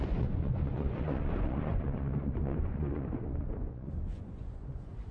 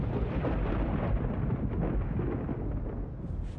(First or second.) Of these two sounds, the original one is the second